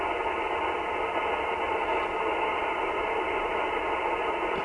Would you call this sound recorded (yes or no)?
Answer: yes